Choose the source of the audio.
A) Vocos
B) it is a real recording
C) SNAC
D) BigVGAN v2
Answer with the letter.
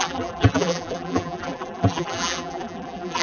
D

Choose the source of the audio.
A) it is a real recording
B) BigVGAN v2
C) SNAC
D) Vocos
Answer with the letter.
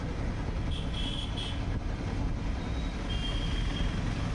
A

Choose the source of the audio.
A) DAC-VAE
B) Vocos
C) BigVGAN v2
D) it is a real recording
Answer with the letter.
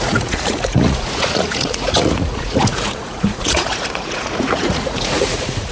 B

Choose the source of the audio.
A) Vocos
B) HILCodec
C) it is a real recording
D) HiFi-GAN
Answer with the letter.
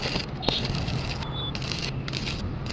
C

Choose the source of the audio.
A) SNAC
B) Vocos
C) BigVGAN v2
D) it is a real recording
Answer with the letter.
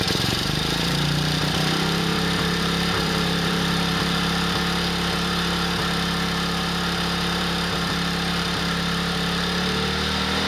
C